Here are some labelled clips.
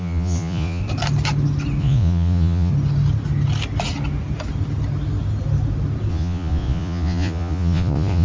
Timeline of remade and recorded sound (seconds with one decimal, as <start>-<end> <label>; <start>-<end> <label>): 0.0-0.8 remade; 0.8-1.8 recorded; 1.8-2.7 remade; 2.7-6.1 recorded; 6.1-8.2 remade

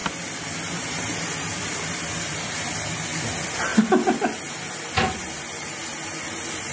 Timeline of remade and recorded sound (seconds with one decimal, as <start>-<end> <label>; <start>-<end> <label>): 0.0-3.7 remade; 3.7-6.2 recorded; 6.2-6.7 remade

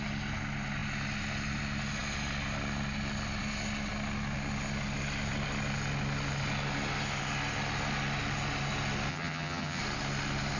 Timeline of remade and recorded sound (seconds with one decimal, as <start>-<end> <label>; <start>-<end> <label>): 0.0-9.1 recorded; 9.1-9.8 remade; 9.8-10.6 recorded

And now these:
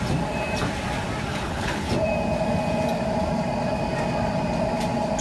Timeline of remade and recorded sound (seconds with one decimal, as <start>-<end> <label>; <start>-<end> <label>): 0.0-1.3 recorded; 1.3-1.9 remade; 1.9-5.2 recorded

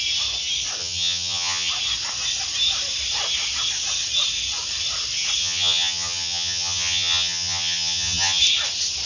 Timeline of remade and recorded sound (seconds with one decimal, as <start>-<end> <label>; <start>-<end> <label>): 0.0-0.8 recorded; 0.8-1.7 remade; 1.7-5.4 recorded; 5.4-8.4 remade; 8.4-9.1 recorded